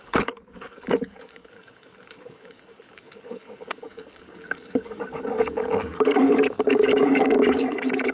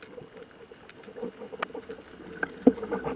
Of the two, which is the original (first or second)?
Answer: second